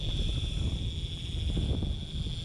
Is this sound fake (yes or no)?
no